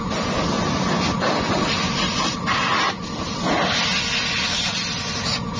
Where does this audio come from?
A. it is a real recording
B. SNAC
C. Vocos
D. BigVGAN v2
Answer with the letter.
A